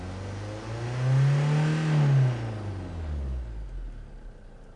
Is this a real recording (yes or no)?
yes